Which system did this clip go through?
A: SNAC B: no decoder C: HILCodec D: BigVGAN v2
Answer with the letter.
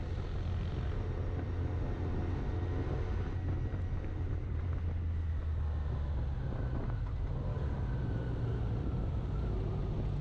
B